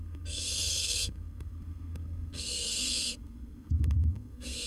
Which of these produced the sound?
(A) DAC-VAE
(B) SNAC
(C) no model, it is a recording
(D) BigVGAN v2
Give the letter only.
B